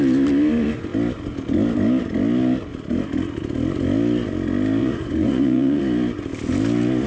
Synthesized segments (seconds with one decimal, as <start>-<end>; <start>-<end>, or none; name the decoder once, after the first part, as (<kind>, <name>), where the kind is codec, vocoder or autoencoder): 4.8-5.8 (vocoder, Vocos)